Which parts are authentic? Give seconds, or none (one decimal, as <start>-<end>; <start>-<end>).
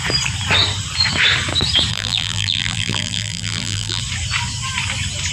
0.0-1.9; 4.0-5.3